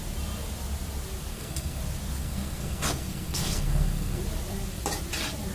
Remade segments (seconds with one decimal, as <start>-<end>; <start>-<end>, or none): 1.3-1.8; 2.2-4.2